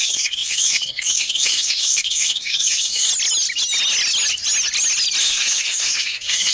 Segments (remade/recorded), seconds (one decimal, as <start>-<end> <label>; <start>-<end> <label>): 0.0-3.1 remade; 3.1-5.2 recorded; 5.2-6.5 remade